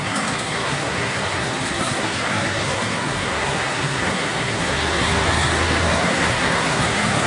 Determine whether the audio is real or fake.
fake